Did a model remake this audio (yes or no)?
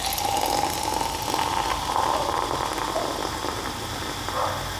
no